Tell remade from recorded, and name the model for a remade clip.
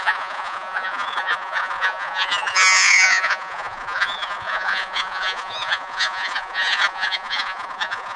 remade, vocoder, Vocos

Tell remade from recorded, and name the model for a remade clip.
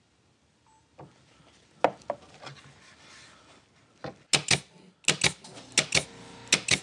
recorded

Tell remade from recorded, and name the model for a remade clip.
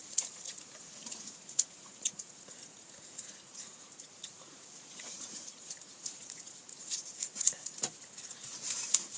remade, vocoder, Vocos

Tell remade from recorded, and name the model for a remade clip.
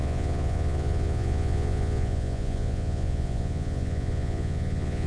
remade, vocoder, Vocos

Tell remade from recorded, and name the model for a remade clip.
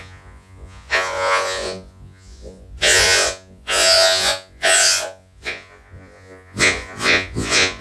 remade, vocoder, Vocos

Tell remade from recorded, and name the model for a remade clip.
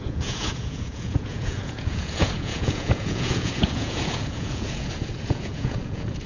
remade, vocoder, Vocos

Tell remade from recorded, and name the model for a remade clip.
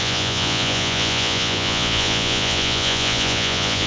remade, vocoder, Vocos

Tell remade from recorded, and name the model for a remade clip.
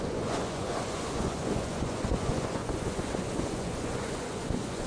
remade, vocoder, Vocos